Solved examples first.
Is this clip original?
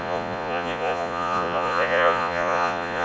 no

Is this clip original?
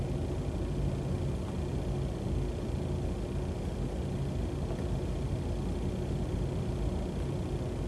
yes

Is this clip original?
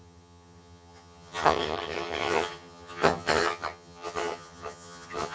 no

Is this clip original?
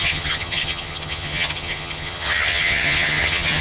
no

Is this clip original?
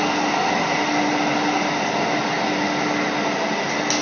yes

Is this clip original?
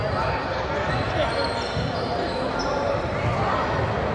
yes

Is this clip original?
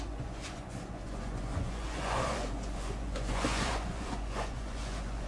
no